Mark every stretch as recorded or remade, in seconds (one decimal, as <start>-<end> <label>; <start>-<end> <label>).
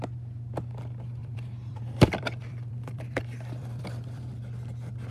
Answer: 0.0-1.2 recorded; 1.2-4.3 remade; 4.3-5.1 recorded